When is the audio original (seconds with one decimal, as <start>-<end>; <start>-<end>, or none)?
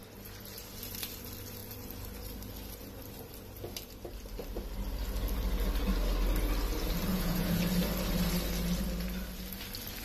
0.0-7.1; 7.6-10.0